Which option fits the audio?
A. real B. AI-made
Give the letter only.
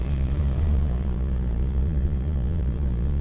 B